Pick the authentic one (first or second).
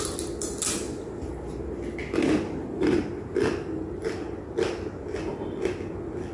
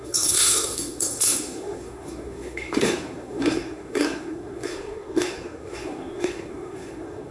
first